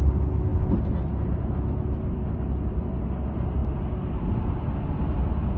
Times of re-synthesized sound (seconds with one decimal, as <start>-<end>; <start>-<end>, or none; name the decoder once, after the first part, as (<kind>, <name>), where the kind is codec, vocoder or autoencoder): 0.5-3.0 (vocoder, BigVGAN v2)